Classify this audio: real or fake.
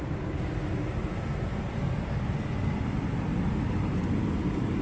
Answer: real